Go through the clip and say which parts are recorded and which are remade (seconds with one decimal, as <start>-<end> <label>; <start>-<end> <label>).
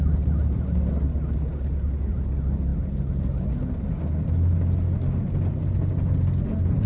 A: 0.0-6.9 recorded